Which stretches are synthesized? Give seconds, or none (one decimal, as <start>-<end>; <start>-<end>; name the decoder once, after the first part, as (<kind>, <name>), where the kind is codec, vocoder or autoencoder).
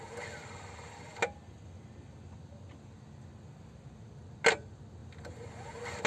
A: none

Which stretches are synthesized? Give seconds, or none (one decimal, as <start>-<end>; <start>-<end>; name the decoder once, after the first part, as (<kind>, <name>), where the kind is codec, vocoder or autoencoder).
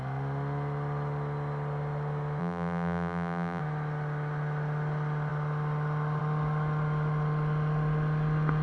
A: 2.4-3.6 (vocoder, BigVGAN v2)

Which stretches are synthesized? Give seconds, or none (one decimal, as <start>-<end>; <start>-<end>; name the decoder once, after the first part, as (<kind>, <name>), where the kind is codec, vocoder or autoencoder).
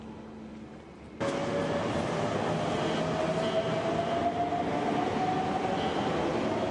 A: none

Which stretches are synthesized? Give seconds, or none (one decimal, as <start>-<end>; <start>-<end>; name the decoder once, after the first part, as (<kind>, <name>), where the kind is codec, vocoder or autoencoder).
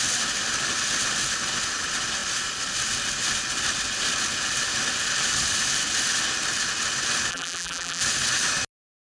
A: 7.3-8.0 (vocoder, BigVGAN v2)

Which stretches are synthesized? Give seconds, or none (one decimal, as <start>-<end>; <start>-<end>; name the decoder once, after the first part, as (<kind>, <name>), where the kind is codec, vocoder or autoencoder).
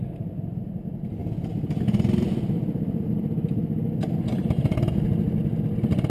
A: 1.2-4.9 (vocoder, BigVGAN v2)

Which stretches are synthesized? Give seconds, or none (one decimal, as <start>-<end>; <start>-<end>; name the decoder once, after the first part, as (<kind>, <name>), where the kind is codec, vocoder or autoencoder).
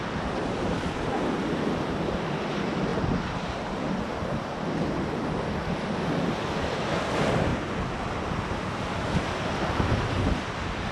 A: none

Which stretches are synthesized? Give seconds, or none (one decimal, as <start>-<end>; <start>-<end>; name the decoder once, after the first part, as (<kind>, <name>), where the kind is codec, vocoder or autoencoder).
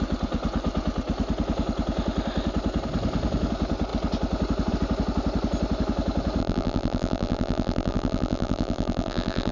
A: 6.4-9.5 (vocoder, BigVGAN v2)